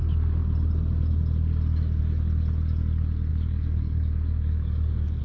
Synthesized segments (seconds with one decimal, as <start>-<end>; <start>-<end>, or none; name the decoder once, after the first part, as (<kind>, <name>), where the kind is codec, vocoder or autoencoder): 3.3-5.2 (codec, DAC)